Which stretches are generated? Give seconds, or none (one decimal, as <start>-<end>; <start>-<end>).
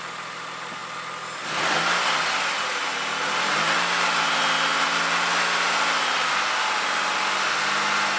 none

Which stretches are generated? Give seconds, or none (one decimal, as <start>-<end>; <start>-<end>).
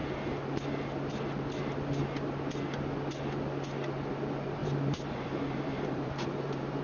4.6-6.8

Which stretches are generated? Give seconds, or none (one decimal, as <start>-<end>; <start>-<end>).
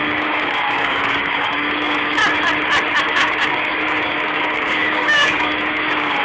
0.0-2.2; 3.0-6.2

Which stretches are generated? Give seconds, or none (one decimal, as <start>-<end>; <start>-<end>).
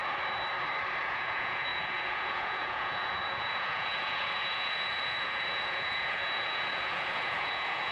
1.0-7.9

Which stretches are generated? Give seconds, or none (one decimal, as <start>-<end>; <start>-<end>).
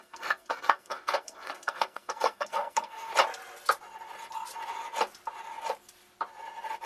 0.0-3.1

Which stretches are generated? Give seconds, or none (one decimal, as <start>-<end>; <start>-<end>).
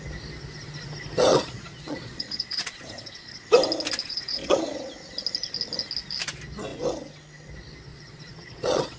1.3-3.4; 4.0-4.9; 7.9-9.0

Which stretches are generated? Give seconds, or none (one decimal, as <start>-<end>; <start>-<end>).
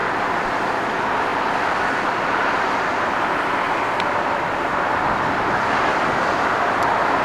none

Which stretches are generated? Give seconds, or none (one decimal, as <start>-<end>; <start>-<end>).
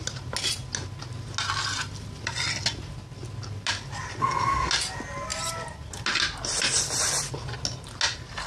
4.2-4.7